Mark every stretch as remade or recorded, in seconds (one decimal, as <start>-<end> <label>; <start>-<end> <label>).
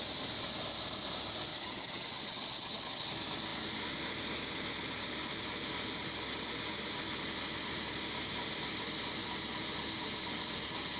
0.0-1.5 recorded; 1.5-3.1 remade; 3.1-11.0 recorded